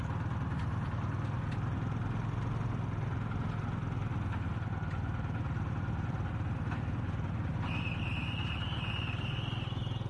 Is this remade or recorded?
recorded